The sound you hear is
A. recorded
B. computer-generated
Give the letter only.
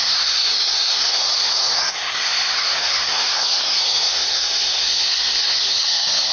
B